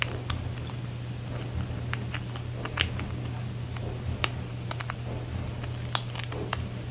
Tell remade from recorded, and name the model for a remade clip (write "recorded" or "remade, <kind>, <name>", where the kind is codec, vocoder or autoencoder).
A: remade, vocoder, BigVGAN v2